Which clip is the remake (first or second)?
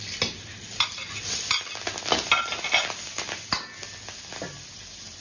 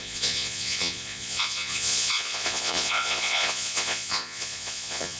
second